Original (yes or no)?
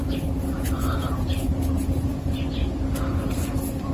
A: yes